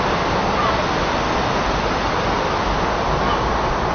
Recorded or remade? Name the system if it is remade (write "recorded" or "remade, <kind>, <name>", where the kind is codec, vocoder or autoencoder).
recorded